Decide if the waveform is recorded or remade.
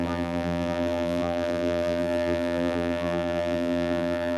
remade